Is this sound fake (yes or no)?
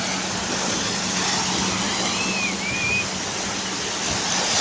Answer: no